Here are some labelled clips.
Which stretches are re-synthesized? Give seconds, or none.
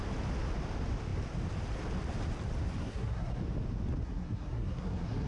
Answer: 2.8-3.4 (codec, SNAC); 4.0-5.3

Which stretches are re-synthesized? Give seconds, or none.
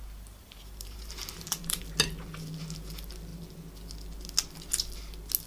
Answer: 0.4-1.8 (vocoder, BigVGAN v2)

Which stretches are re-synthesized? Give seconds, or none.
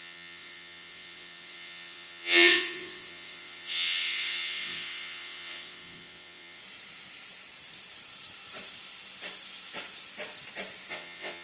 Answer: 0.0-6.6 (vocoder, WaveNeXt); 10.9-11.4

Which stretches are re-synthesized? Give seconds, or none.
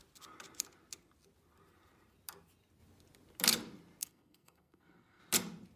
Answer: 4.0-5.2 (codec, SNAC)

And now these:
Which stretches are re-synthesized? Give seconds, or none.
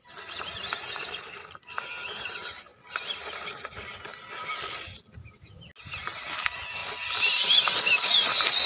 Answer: 2.7-3.2 (vocoder, BigVGAN v2)